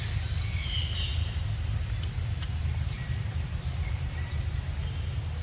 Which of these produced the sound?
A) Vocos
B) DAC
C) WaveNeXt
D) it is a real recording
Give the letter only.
D